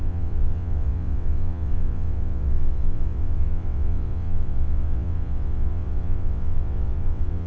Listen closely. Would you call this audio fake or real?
fake